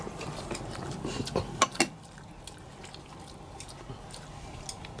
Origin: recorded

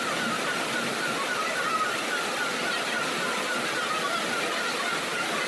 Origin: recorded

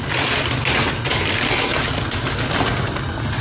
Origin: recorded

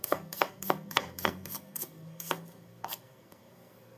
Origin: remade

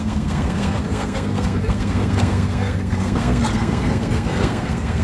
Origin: remade